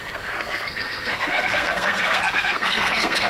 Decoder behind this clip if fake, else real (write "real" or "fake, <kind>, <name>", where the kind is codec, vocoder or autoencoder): fake, codec, SNAC